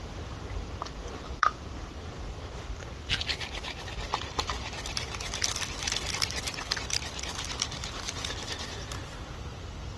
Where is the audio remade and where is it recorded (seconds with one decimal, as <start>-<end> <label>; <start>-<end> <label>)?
0.0-10.0 recorded